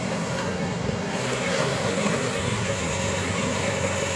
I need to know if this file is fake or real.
fake